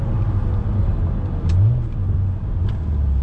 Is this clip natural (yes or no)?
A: yes